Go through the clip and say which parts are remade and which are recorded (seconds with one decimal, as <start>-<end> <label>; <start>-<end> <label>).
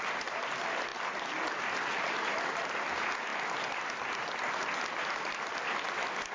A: 0.0-6.3 recorded